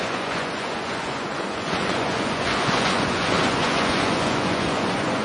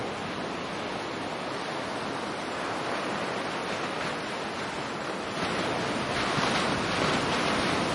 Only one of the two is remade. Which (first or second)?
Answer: first